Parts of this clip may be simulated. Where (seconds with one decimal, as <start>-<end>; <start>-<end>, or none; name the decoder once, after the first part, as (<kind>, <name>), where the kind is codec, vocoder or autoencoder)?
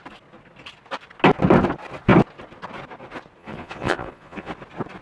3.4-4.5 (vocoder, Vocos)